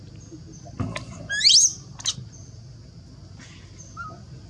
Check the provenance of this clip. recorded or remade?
recorded